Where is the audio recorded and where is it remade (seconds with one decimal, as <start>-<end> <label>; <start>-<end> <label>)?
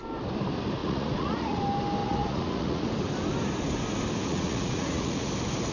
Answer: 0.0-0.8 recorded; 0.8-1.6 remade; 1.6-2.0 recorded; 2.0-2.9 remade; 2.9-4.3 recorded; 4.3-5.3 remade; 5.3-5.7 recorded